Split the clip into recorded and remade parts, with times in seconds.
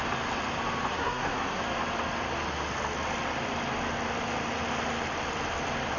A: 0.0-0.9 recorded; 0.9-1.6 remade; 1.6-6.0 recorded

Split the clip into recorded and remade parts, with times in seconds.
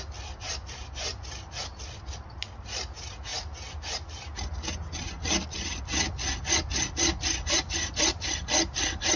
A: 0.0-9.2 recorded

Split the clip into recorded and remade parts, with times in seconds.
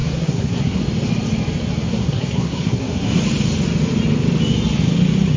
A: 0.0-0.8 remade; 0.8-1.9 recorded; 1.9-3.2 remade; 3.2-5.4 recorded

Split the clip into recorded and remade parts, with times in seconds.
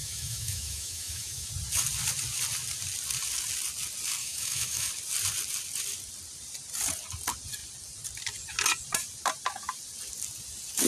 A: 0.0-1.5 remade; 1.5-4.2 recorded; 4.2-4.9 remade; 4.9-10.9 recorded